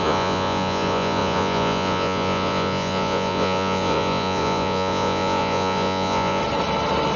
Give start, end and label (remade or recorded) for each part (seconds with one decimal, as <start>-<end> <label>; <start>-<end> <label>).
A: 0.0-6.4 remade; 6.4-7.2 recorded